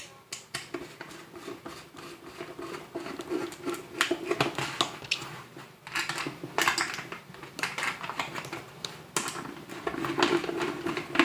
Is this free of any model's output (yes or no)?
yes